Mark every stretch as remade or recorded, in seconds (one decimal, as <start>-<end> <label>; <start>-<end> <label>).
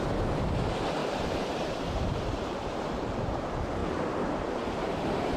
0.0-1.0 recorded; 1.0-3.0 remade; 3.0-3.8 recorded; 3.8-5.4 remade